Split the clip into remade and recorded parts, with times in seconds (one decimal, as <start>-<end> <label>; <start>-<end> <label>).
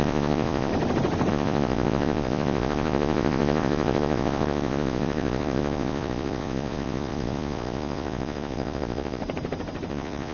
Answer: 0.0-0.7 remade; 0.7-1.3 recorded; 1.3-9.2 remade; 9.2-9.9 recorded; 9.9-10.3 remade